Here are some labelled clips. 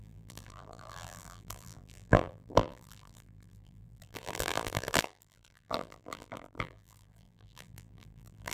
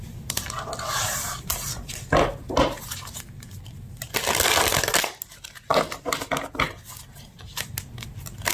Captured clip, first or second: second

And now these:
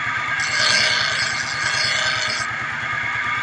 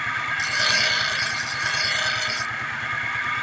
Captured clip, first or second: first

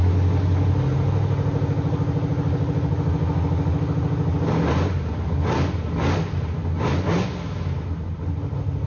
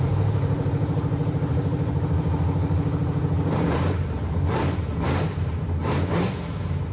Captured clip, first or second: first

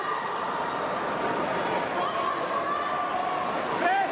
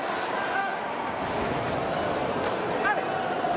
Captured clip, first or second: second